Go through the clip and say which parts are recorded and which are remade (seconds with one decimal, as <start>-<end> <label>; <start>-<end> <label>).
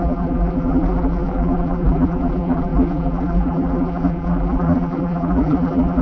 0.0-6.0 remade